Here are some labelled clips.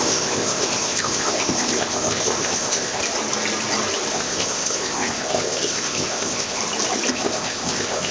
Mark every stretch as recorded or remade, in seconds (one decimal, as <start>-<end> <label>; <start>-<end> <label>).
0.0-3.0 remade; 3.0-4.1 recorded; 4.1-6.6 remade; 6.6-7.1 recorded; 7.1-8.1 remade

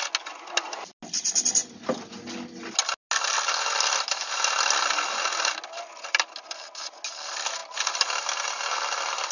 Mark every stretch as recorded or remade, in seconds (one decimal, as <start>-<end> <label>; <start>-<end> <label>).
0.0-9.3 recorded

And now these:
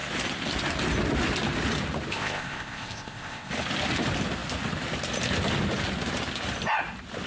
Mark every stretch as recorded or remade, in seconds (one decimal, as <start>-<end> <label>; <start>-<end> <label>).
0.0-2.1 recorded; 2.1-3.5 remade; 3.5-7.3 recorded

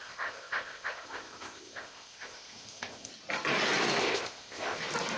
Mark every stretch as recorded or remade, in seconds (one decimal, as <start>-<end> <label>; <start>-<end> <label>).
0.0-3.1 remade; 3.1-4.0 recorded; 4.0-4.8 remade; 4.8-5.2 recorded

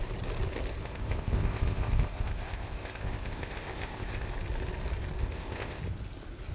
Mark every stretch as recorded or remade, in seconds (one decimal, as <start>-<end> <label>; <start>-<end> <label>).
0.0-0.8 recorded; 0.8-4.3 remade; 4.3-5.2 recorded; 5.2-5.8 remade; 5.8-6.5 recorded

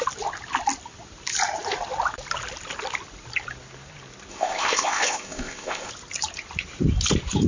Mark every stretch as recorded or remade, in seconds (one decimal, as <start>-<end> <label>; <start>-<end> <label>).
0.0-4.3 recorded; 4.3-5.9 remade; 5.9-7.5 recorded

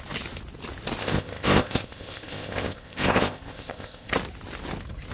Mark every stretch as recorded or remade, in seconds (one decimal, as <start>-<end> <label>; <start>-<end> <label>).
0.0-1.0 recorded; 1.0-4.1 remade; 4.1-5.1 recorded